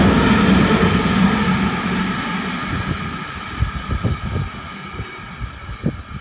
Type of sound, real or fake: real